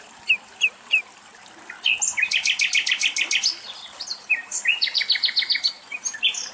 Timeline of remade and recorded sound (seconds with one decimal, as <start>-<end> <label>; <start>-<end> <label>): 0.0-1.3 remade; 1.3-3.9 recorded; 3.9-6.5 remade